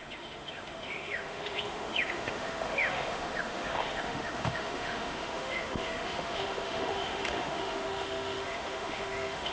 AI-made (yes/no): yes